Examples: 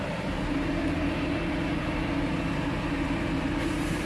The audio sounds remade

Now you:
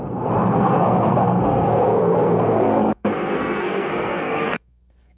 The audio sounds remade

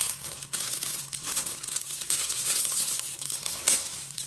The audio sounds remade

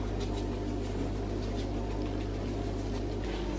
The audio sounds recorded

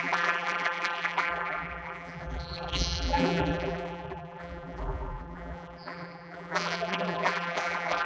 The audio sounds remade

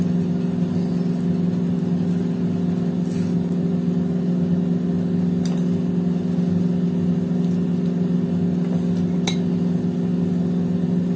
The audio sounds recorded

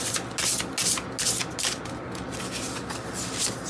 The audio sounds recorded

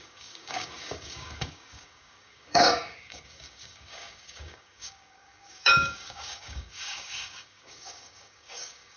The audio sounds remade